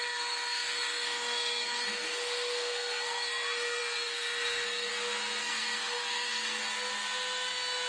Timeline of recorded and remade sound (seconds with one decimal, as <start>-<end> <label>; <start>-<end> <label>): 0.0-4.9 remade; 4.9-5.4 recorded; 5.4-6.6 remade; 6.6-7.9 recorded

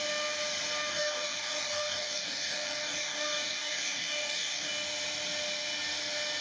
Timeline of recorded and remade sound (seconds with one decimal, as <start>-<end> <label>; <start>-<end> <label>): 0.0-0.9 recorded; 0.9-4.7 remade; 4.7-6.4 recorded